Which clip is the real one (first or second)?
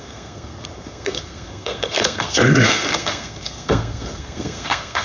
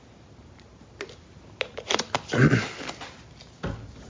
second